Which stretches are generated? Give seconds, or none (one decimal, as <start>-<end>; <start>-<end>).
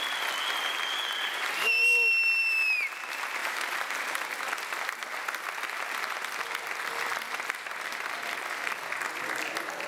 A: 3.4-4.0